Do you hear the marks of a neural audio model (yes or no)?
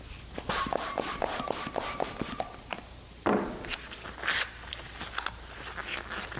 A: no